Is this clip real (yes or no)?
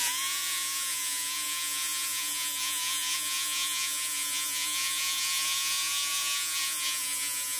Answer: no